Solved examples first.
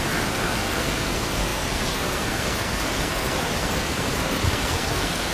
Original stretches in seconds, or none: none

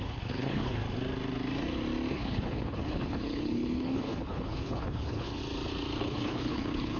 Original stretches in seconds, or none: 0.8-2.1; 5.4-6.0

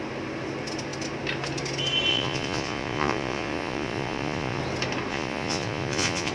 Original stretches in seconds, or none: 0.0-2.1; 4.6-5.1

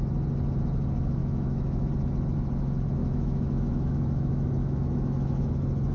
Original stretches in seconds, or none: 0.0-1.2; 1.9-3.0; 5.5-5.9

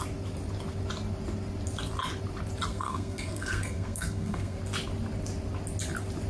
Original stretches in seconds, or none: 0.0-2.7; 4.6-6.3

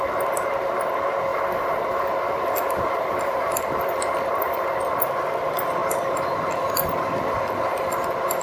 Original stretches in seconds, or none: 0.0-1.3; 5.1-8.4